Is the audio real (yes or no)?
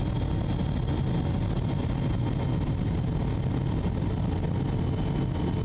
yes